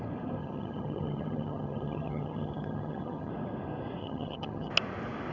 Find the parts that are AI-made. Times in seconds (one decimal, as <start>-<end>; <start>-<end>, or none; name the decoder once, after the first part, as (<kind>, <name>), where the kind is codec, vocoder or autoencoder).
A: 0.4-3.3 (vocoder, HiFi-GAN); 4.0-4.7